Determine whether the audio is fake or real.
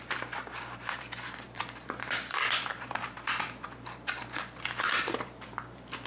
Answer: fake